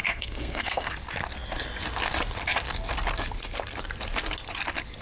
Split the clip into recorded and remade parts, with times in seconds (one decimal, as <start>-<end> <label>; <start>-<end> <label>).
0.0-0.9 remade; 0.9-5.0 recorded